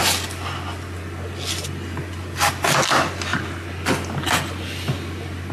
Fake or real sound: real